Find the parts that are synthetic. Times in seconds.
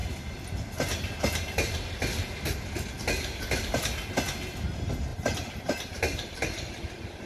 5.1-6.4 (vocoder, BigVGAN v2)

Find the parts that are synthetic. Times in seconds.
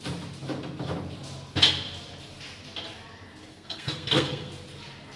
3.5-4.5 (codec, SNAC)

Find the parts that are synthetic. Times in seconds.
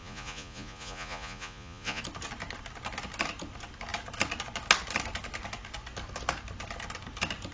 0.0-2.0 (vocoder, Vocos)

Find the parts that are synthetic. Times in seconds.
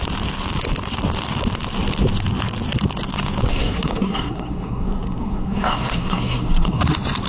3.5-6.8 (codec, SNAC)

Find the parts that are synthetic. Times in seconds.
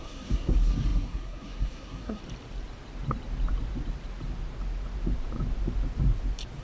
0.0-2.2 (codec, SNAC)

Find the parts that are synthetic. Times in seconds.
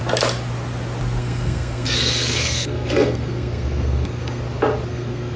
1.2-4.4 (codec, SNAC); 4.9-5.4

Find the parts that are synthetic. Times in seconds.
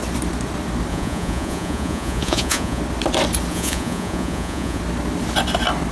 0.9-2.8 (vocoder, Vocos); 3.5-4.8